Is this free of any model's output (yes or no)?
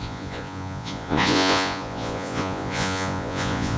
no